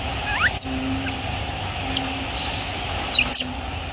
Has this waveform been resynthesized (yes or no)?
no